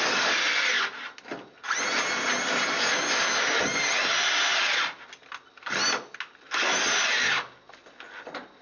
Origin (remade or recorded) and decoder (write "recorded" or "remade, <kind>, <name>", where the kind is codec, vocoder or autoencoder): recorded